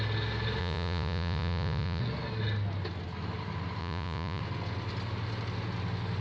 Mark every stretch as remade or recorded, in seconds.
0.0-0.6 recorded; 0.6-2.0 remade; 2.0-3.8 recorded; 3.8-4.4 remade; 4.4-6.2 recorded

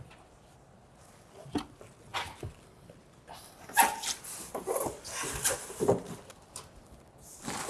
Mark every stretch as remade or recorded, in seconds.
0.0-7.7 recorded

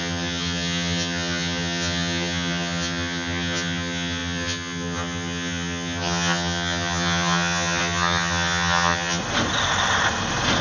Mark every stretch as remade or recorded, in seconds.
0.0-9.2 remade; 9.2-10.6 recorded

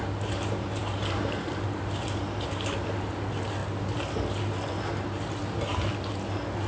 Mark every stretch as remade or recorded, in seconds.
0.0-6.7 recorded